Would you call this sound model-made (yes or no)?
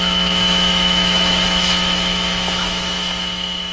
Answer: yes